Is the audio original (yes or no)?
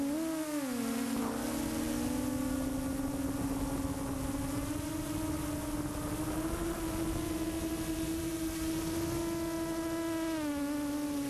yes